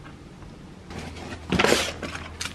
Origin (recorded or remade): recorded